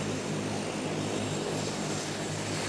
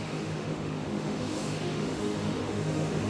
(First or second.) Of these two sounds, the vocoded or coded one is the second